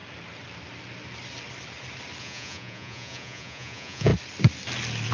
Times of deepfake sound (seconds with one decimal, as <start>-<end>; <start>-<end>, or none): 2.2-4.1

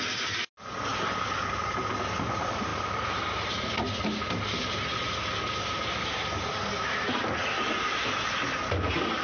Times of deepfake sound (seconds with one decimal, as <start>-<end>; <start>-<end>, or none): none

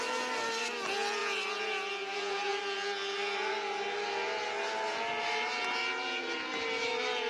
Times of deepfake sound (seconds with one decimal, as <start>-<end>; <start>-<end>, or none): 1.2-2.6; 5.8-6.5